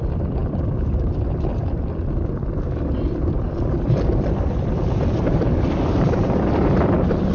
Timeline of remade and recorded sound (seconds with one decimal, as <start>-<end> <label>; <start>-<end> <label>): 0.0-7.3 remade